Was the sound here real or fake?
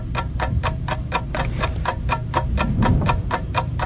fake